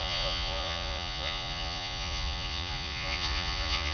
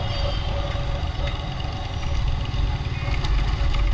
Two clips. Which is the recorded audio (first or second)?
second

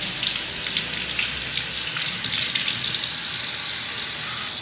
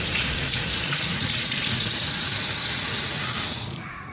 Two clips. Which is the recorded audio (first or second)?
first